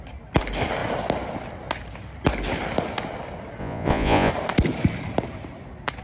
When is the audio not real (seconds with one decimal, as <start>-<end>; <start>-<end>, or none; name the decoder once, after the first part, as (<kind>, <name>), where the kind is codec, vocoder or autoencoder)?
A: 3.6-4.3 (vocoder, Vocos)